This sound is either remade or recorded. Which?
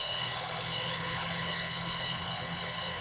remade